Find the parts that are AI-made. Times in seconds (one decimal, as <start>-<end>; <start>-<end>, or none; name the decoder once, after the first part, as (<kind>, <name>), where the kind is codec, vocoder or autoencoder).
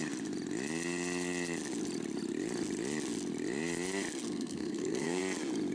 4.2-5.2 (codec, SNAC)